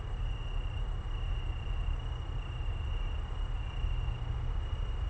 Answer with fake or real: real